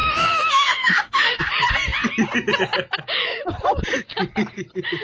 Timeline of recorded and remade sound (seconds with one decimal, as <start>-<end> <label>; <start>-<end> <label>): 0.0-1.4 remade; 1.4-5.0 recorded